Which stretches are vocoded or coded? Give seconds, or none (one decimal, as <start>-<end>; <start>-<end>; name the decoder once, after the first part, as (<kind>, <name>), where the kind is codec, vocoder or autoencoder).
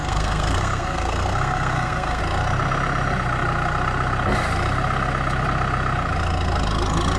0.0-2.2 (codec, SNAC)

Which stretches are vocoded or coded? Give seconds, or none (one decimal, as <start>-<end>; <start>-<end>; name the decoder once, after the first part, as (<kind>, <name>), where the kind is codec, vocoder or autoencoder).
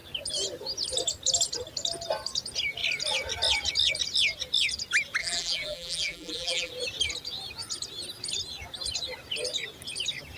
5.2-6.7 (vocoder, BigVGAN v2)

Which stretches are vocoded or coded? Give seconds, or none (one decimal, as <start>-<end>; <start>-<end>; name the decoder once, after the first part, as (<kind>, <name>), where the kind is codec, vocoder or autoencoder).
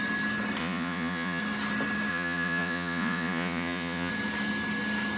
0.6-1.4 (vocoder, Vocos); 2.1-4.1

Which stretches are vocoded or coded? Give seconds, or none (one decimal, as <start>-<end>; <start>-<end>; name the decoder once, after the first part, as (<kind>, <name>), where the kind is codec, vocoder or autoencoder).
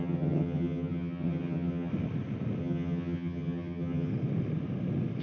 0.0-1.9 (vocoder, HiFi-GAN); 2.6-4.1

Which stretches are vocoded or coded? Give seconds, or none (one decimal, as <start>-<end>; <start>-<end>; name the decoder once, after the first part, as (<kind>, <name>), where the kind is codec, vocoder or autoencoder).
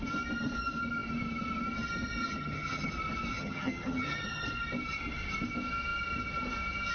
2.2-2.9 (vocoder, HiFi-GAN); 3.3-4.4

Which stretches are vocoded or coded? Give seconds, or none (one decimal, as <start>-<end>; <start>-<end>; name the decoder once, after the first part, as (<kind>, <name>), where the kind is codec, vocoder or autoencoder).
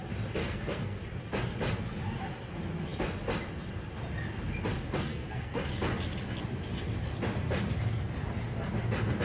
0.4-1.0 (codec, SNAC); 5.1-5.7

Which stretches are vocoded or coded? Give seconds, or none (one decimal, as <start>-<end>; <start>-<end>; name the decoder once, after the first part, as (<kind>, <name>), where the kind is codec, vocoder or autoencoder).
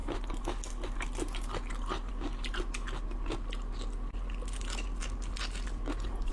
none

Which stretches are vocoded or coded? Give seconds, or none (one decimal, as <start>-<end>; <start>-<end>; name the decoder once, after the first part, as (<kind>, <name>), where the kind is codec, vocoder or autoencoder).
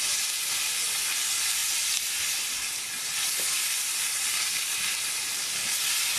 none